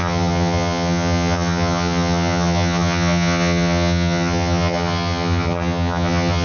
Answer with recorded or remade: remade